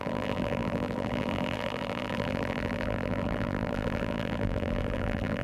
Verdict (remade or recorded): remade